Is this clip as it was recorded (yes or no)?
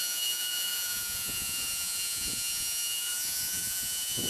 no